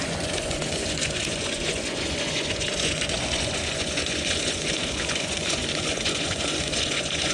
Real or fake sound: fake